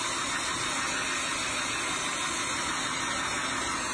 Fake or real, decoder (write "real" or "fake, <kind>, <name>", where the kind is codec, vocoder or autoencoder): real